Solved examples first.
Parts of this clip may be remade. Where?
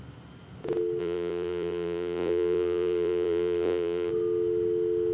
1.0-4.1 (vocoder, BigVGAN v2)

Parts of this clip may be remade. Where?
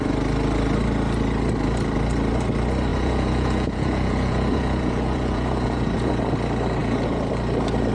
2.9-6.2 (vocoder, Vocos); 6.8-7.3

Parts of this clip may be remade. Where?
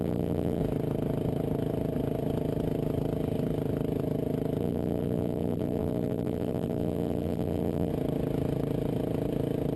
0.0-0.6 (vocoder, BigVGAN v2); 4.6-7.9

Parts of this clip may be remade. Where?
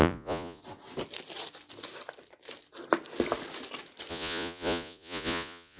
0.0-0.6 (vocoder, Vocos); 4.1-5.8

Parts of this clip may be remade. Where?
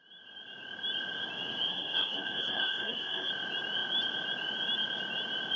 1.7-3.3 (codec, SNAC)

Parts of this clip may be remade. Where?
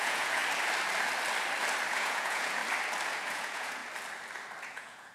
0.0-0.4 (vocoder, Vocos); 1.9-2.6; 3.3-3.8; 4.6-5.1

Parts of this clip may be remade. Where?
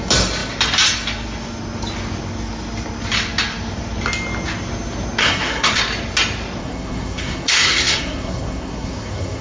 5.2-5.8 (codec, SNAC); 6.6-9.4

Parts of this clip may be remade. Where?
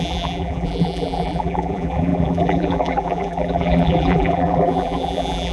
0.0-5.5 (vocoder, BigVGAN v2)